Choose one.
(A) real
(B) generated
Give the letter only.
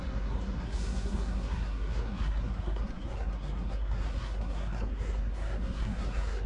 B